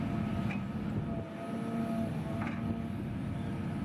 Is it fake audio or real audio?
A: real